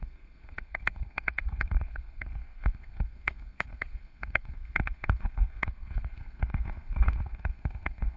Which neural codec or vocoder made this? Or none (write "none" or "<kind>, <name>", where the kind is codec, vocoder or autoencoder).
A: codec, SNAC